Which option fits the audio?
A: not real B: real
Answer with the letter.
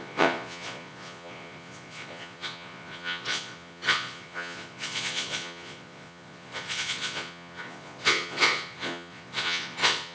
A